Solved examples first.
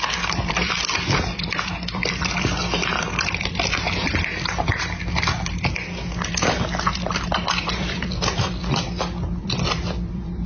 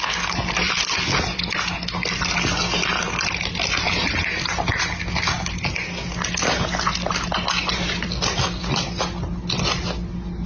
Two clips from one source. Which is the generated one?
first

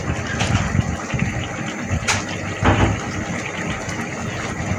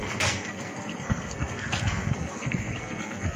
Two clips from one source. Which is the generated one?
second